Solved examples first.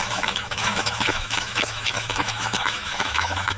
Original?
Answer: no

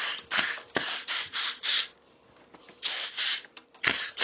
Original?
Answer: no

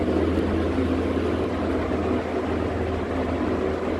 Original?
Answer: yes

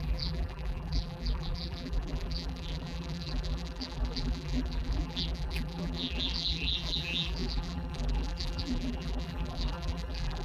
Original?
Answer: no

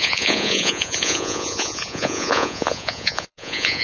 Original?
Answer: no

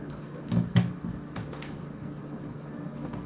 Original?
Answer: no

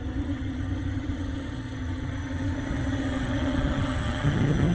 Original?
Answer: no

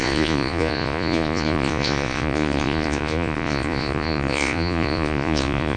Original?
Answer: no